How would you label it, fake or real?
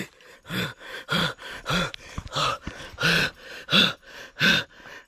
real